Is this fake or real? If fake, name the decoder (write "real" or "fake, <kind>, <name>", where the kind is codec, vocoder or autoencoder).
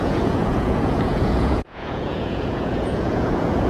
fake, vocoder, Vocos